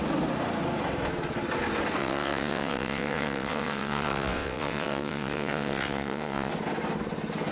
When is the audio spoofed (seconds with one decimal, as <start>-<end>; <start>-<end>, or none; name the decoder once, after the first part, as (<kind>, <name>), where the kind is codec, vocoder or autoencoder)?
2.0-6.5 (vocoder, WaveNeXt)